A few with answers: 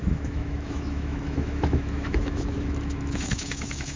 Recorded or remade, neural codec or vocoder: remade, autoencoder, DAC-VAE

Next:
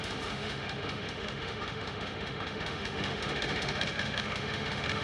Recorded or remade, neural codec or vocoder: remade, autoencoder, DAC-VAE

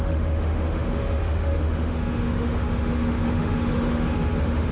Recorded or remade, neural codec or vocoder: remade, autoencoder, DAC-VAE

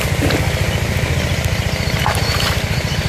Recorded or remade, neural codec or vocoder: recorded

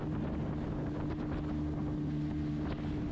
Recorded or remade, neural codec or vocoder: recorded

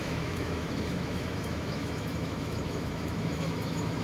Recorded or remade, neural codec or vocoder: remade, autoencoder, DAC-VAE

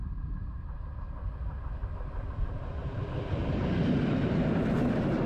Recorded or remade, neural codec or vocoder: recorded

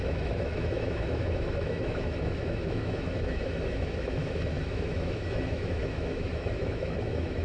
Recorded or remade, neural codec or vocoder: remade, autoencoder, DAC-VAE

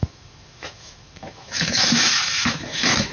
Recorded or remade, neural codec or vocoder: remade, autoencoder, DAC-VAE